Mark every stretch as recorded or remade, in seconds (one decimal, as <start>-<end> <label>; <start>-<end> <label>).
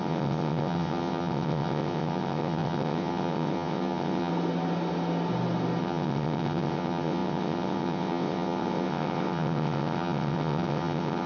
0.0-4.3 remade; 4.3-5.8 recorded; 5.8-11.3 remade